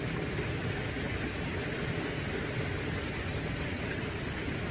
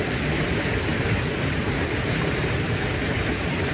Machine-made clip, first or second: second